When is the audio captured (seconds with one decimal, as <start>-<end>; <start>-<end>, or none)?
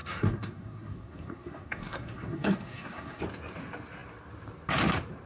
3.2-5.3